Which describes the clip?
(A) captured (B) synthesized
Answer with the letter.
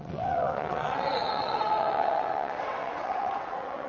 B